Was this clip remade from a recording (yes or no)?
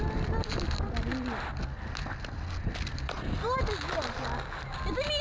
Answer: no